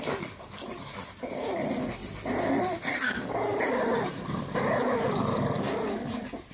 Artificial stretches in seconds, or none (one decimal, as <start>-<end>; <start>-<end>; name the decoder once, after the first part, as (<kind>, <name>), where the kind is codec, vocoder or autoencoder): none